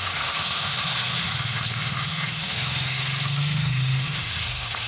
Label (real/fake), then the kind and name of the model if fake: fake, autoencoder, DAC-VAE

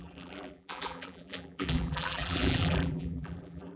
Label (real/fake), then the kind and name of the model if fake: fake, vocoder, BigVGAN v2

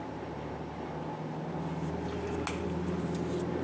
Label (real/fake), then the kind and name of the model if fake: real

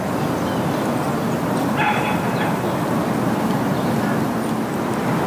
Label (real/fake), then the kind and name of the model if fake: real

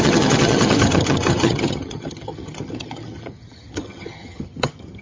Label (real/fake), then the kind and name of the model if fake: fake, vocoder, HiFi-GAN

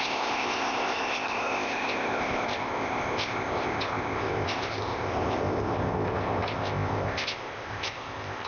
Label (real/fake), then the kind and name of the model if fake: fake, codec, ZipCodec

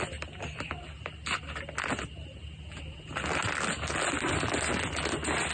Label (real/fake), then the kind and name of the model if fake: real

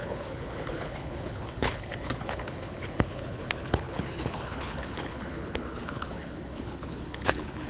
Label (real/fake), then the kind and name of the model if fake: fake, codec, HILCodec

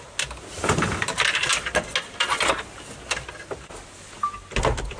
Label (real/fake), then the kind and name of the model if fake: real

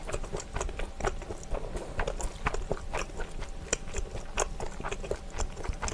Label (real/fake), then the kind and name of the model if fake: real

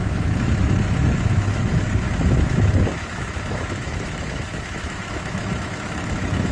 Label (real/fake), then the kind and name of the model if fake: fake, autoencoder, DAC-VAE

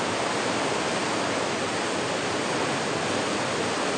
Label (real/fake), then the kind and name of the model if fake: real